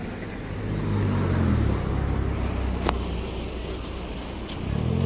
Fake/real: real